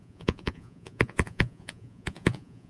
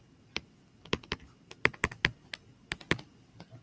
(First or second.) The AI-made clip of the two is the first